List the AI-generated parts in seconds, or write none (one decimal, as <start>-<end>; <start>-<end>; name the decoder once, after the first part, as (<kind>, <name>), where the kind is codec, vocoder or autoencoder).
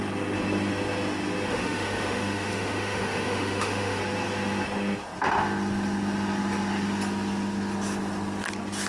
1.5-4.0 (autoencoder, DAC-VAE)